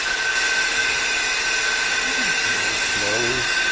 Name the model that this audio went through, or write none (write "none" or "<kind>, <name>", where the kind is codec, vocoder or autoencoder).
none